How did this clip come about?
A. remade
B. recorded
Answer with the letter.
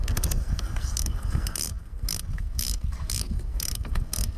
A